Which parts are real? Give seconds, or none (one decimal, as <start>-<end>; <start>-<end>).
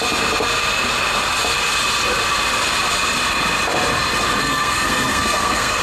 0.0-4.4